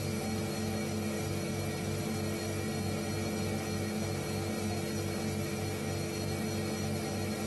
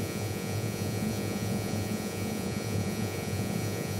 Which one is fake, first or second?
second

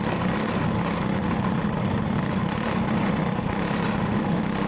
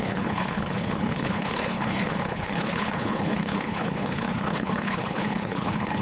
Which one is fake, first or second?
second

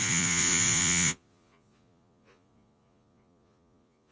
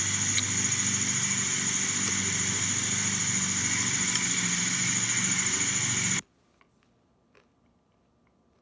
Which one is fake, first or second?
first